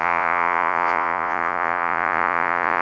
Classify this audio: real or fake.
fake